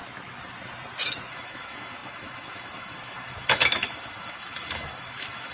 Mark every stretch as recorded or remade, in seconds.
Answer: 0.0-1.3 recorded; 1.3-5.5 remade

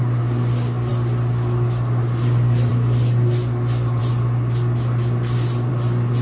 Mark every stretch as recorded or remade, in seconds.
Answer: 0.0-6.2 recorded

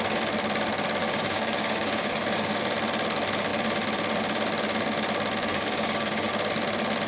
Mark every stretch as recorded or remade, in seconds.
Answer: 0.0-1.0 recorded; 1.0-2.6 remade; 2.6-5.5 recorded; 5.5-6.3 remade; 6.3-7.1 recorded

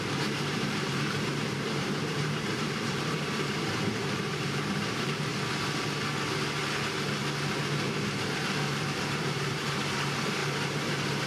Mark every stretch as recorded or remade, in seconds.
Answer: 0.0-5.3 remade; 5.3-9.0 recorded; 9.0-10.4 remade; 10.4-11.3 recorded

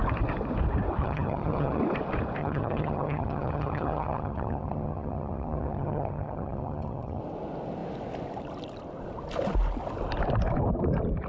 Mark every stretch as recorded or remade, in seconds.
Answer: 0.0-1.0 recorded; 1.0-1.8 remade; 1.8-2.4 recorded; 2.4-7.2 remade; 7.2-11.3 recorded

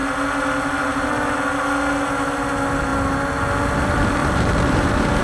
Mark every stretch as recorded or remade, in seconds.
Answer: 0.0-4.2 recorded; 4.2-5.2 remade